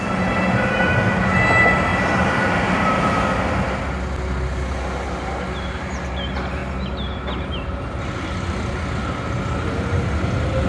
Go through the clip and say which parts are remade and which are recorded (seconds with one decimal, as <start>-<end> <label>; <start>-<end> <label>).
0.0-10.7 recorded